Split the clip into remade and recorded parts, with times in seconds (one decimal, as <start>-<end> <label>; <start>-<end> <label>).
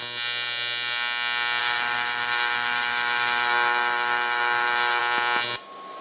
0.0-1.6 recorded; 1.6-5.0 remade; 5.0-6.0 recorded